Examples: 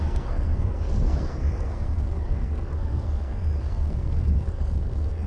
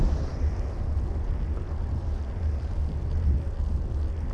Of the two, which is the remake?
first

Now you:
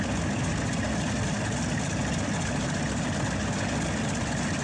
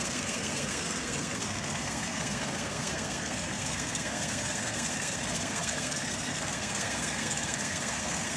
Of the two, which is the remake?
second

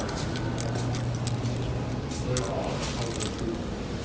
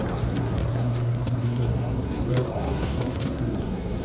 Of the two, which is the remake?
second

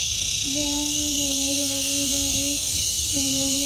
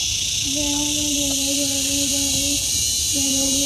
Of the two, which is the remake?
first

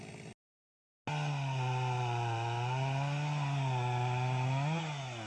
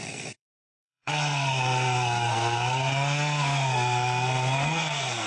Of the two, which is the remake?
second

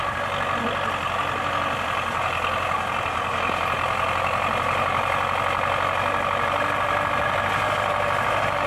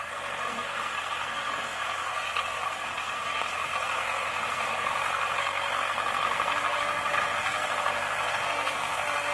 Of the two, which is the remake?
second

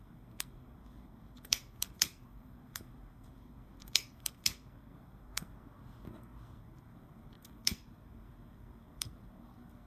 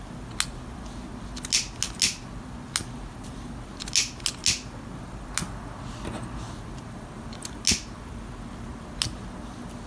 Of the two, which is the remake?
first